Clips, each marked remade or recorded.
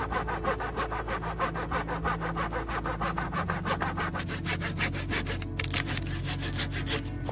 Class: recorded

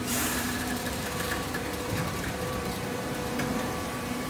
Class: remade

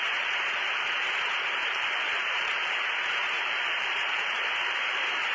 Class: remade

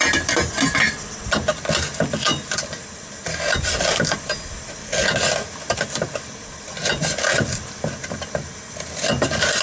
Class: recorded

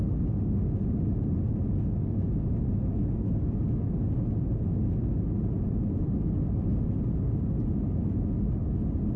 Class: recorded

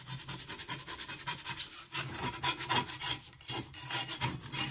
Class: recorded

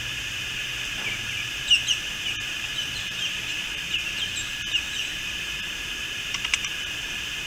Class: remade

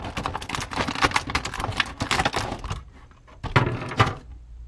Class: recorded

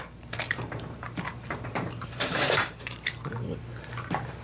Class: remade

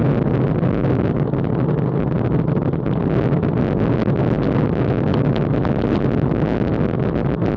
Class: recorded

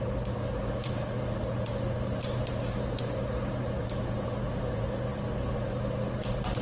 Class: remade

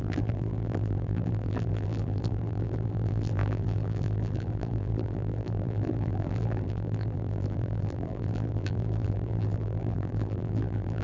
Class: remade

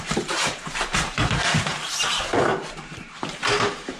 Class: remade